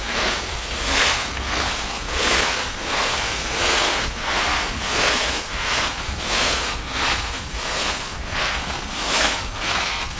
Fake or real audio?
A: fake